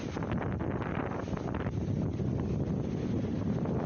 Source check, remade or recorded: recorded